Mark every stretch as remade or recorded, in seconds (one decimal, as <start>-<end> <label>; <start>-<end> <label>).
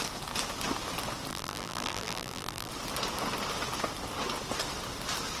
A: 0.0-1.3 recorded; 1.3-2.7 remade; 2.7-5.4 recorded